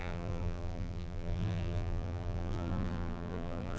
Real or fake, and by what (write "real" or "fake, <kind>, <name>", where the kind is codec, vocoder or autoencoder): fake, vocoder, BigVGAN v2